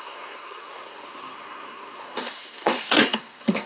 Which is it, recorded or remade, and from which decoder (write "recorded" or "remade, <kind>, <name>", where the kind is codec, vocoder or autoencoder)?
remade, codec, SNAC